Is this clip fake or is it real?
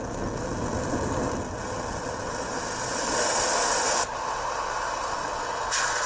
real